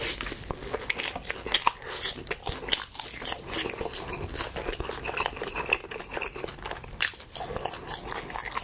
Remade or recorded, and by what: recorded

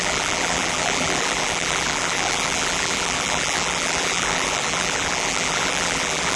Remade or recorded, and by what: remade, vocoder, BigVGAN v2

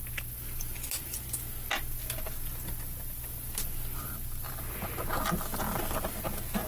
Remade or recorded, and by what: recorded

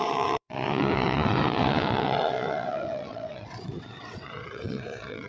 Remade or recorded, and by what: remade, vocoder, WaveNeXt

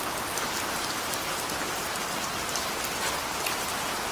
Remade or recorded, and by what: recorded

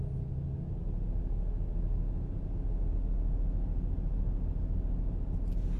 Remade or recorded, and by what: recorded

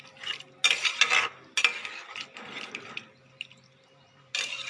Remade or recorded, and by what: recorded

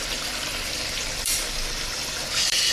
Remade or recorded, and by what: remade, vocoder, BigVGAN v2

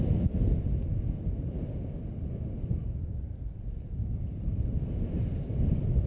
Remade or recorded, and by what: recorded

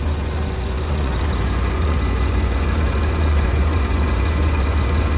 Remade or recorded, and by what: remade, vocoder, Vocos